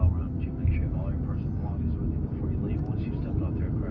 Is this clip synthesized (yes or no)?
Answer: no